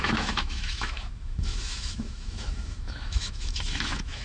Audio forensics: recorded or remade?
remade